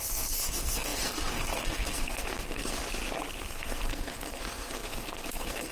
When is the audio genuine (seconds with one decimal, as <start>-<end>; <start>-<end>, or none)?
2.8-3.4